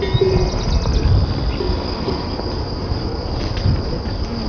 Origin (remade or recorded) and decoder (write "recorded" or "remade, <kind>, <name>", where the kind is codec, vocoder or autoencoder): recorded